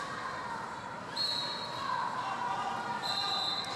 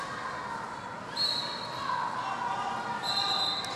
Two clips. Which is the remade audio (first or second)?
first